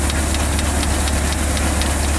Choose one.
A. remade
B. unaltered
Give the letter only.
B